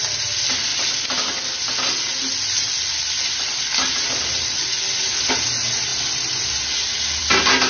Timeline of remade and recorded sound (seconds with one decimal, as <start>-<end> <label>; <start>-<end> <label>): 0.0-7.7 recorded